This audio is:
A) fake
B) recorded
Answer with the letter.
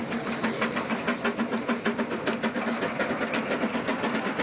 B